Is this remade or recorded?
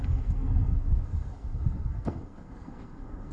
remade